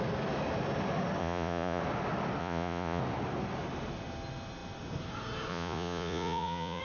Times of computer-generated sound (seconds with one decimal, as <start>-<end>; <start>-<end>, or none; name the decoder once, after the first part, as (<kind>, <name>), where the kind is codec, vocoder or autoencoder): 1.2-1.8 (vocoder, Vocos); 2.4-3.0; 5.5-6.8